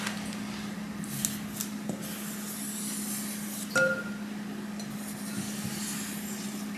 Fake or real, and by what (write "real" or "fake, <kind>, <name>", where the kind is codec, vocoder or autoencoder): real